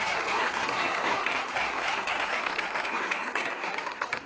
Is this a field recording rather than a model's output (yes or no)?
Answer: no